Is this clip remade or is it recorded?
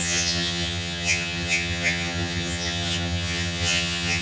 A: remade